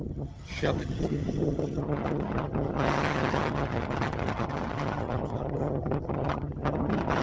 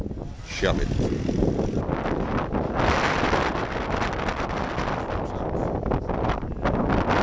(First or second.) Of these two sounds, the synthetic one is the first